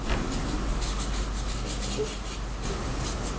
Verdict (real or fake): real